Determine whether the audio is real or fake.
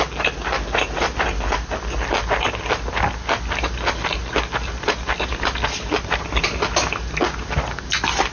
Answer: real